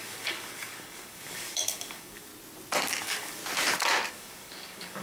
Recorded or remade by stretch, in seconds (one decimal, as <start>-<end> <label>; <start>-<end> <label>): 0.0-2.3 remade; 2.3-3.0 recorded; 3.0-3.4 remade; 3.4-4.1 recorded; 4.1-5.0 remade